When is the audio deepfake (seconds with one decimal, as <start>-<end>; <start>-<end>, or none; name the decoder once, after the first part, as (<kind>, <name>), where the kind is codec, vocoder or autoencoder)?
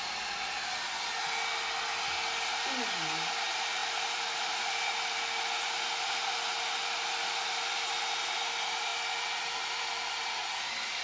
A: 3.8-5.2 (vocoder, BigVGAN v2)